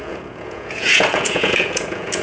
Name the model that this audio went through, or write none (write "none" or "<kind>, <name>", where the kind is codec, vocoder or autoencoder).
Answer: vocoder, Vocos